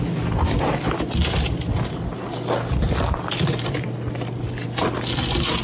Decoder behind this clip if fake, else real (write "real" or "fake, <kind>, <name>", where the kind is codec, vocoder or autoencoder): real